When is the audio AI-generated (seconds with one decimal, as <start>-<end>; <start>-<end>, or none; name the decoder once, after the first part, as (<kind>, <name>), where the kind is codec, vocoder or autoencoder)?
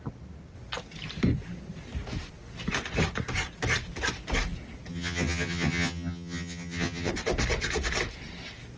4.9-7.1 (vocoder, HiFi-GAN)